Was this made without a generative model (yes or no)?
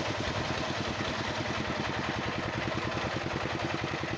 yes